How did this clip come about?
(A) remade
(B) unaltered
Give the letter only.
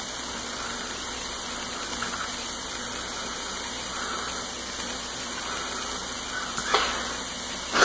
B